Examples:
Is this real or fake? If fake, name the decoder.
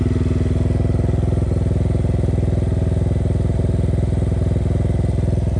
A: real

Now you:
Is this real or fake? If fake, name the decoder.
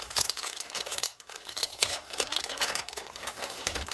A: fake, codec, SNAC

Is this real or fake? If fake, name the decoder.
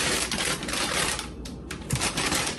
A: fake, vocoder, BigVGAN v2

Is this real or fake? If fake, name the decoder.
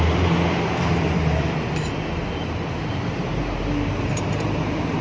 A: fake, vocoder, BigVGAN v2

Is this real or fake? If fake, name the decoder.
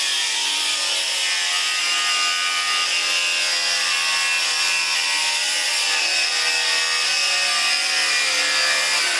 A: real